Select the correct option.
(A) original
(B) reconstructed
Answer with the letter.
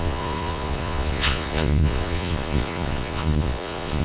B